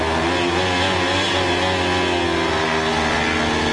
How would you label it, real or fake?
real